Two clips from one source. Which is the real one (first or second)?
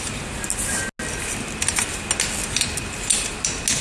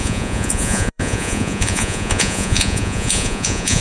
first